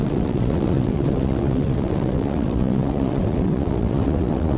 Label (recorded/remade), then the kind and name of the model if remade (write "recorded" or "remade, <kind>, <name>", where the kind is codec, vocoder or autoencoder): remade, vocoder, WaveNeXt